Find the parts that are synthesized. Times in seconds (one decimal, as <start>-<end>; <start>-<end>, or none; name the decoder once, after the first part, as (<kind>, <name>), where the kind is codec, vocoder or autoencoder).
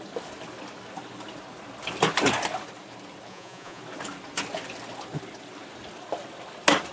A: 3.3-3.8 (vocoder, Vocos)